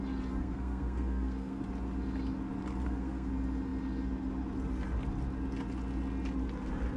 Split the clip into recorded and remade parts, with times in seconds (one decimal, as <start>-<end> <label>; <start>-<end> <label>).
0.0-0.4 recorded; 0.4-1.6 remade; 1.6-2.8 recorded; 2.8-3.3 remade; 3.3-7.0 recorded

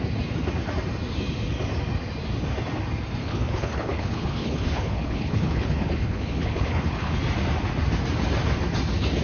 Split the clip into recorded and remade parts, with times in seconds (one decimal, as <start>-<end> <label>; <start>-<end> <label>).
0.0-3.2 recorded; 3.2-7.2 remade; 7.2-9.2 recorded

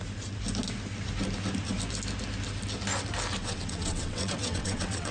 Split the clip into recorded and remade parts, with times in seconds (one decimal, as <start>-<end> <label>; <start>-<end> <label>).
0.0-3.4 recorded; 3.4-5.1 remade

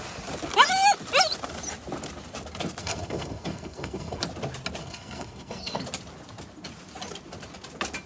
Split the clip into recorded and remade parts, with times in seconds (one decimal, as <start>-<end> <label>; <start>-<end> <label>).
0.0-2.8 recorded; 2.8-4.2 remade; 4.2-4.8 recorded; 4.8-5.8 remade; 5.8-8.1 recorded

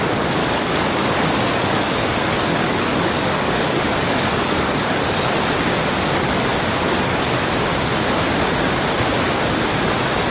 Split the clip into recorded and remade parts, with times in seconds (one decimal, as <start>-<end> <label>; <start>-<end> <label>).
0.0-0.4 recorded; 0.4-5.3 remade; 5.3-10.3 recorded